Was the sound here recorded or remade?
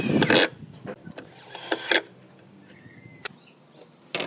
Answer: recorded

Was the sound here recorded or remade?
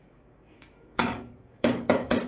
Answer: remade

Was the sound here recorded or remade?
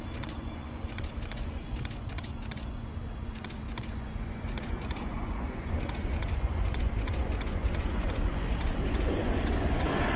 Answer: remade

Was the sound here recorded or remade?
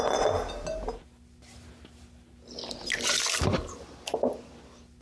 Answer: recorded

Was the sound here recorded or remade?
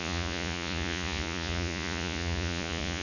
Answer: remade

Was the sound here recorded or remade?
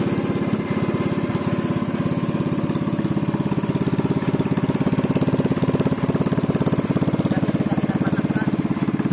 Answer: recorded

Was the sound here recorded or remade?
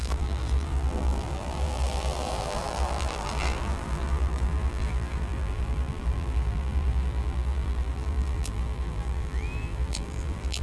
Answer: remade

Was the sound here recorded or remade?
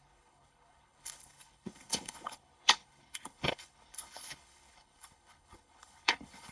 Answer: remade